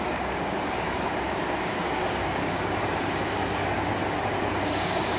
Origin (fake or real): fake